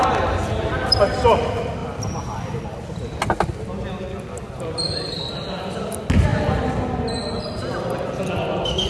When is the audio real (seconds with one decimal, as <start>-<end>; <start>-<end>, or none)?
0.0-8.9